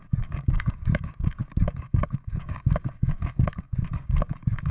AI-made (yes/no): yes